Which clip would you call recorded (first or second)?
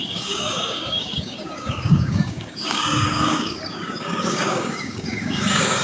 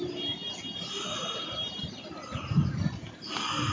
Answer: second